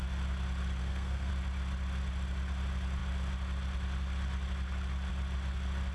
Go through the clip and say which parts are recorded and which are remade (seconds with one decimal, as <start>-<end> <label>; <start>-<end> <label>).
0.0-0.8 recorded; 0.8-1.3 remade; 1.3-5.9 recorded